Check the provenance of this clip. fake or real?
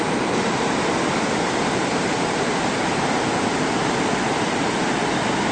fake